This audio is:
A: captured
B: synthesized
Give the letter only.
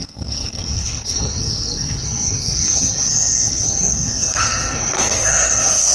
B